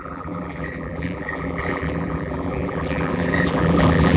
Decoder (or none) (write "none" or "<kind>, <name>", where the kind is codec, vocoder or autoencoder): vocoder, BigVGAN v2